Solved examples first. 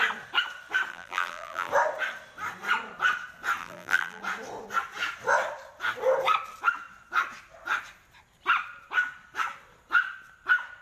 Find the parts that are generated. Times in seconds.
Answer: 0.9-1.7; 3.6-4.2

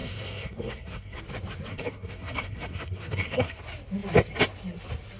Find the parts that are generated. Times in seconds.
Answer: 0.0-1.2; 1.7-3.6

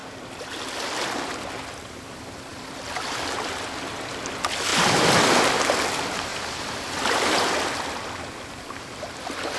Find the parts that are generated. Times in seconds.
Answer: 4.7-5.5; 6.3-8.8